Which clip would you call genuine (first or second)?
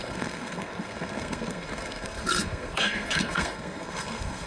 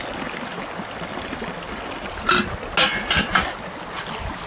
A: second